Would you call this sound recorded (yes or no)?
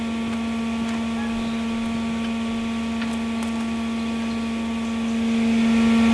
yes